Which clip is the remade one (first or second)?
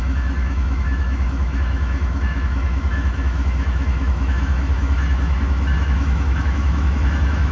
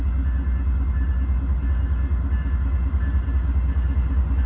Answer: first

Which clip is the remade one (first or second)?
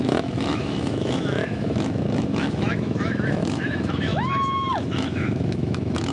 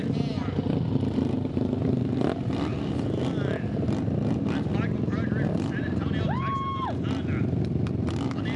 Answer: first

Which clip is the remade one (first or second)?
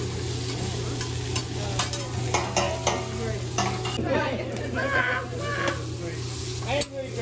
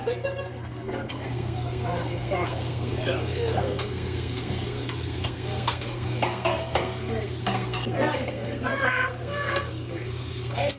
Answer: second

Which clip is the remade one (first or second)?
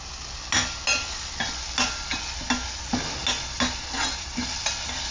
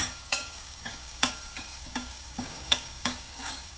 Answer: second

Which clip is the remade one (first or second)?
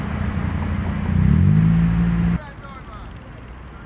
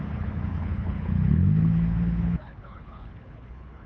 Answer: second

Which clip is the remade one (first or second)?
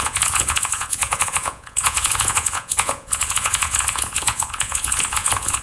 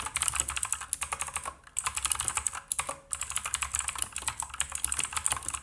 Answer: first